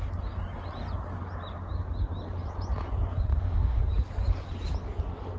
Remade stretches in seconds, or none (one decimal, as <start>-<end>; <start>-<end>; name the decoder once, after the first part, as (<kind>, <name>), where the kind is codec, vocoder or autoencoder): 3.3-3.8 (autoencoder, DAC-VAE)